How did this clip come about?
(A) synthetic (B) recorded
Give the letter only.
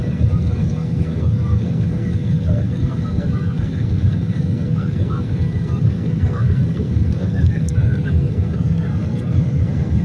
A